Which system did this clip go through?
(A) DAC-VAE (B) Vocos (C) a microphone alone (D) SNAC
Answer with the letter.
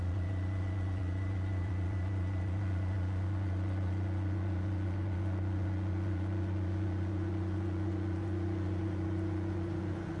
B